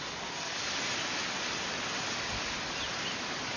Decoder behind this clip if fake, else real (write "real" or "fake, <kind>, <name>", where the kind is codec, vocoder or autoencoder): real